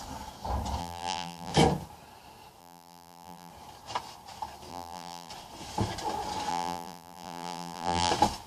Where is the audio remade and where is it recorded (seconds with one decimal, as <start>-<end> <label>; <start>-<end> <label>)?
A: 0.0-0.8 recorded; 0.8-1.5 remade; 1.5-2.6 recorded; 2.6-3.5 remade; 3.5-4.7 recorded; 4.7-5.3 remade; 5.3-6.5 recorded; 6.5-8.1 remade; 8.1-8.5 recorded